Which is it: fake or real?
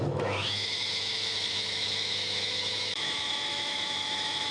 fake